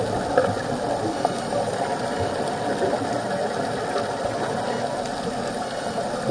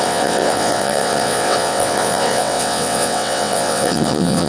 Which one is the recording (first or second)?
first